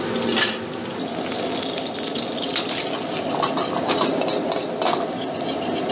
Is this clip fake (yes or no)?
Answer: no